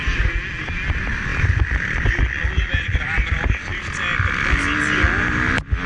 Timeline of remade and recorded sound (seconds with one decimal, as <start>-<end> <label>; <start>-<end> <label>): 0.0-5.9 recorded